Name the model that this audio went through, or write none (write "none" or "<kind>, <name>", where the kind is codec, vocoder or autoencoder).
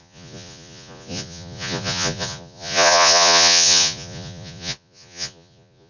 vocoder, Vocos